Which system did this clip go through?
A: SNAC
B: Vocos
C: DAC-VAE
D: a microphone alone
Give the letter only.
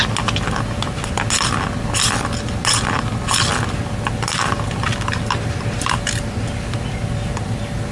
D